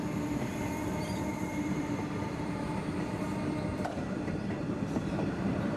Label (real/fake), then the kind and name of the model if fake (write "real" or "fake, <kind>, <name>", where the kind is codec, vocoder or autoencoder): fake, vocoder, BigVGAN v2